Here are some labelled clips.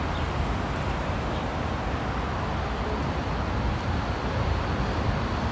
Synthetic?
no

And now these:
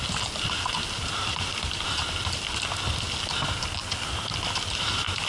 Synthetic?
no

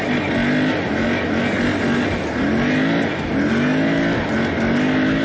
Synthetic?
no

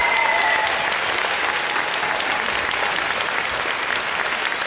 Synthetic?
no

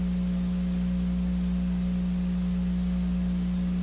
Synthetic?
no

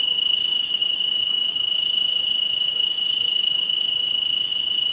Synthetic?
yes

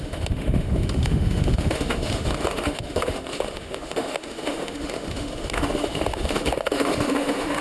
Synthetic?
yes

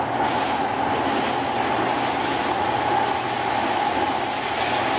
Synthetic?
no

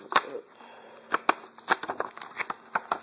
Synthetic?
no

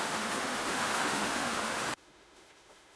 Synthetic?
yes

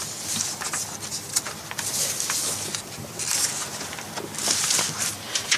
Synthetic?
no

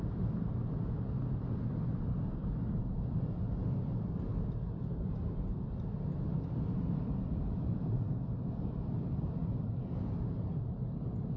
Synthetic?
no